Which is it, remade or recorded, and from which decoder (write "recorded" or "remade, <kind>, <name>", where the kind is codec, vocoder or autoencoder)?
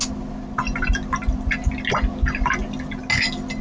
recorded